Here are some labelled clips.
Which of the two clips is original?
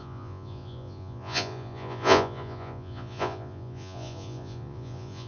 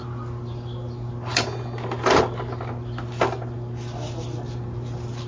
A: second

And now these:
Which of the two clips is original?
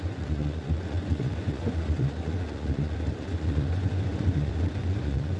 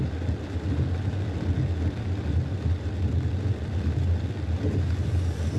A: second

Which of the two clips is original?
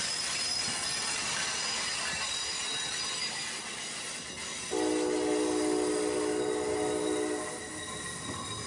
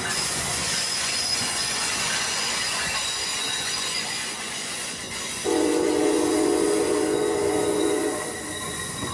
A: first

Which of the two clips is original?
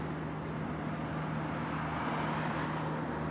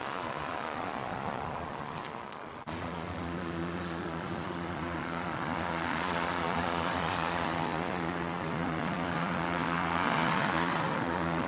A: first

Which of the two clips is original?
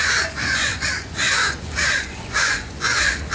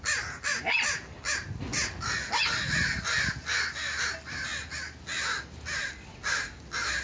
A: second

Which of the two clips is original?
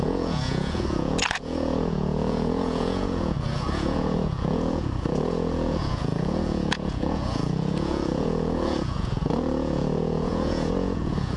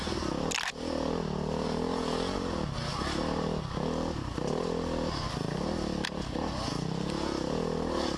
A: second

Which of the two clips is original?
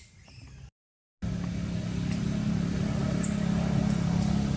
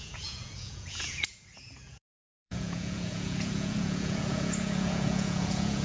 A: first